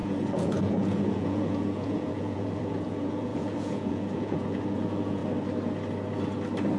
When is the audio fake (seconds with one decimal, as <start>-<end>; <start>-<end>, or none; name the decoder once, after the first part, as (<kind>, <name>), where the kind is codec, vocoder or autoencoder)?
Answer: 0.0-5.2 (vocoder, Vocos)